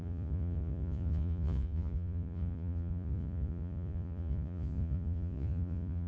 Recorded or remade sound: remade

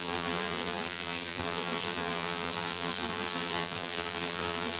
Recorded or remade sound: remade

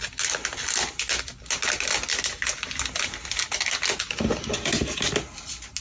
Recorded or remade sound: recorded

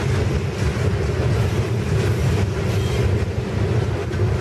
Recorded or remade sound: recorded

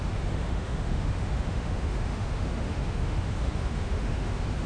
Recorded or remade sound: remade